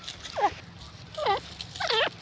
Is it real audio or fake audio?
real